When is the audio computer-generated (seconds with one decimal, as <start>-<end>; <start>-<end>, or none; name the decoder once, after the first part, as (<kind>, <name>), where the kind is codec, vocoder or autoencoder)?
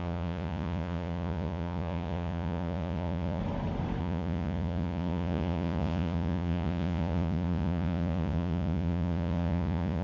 0.0-3.4 (vocoder, Vocos); 4.0-10.0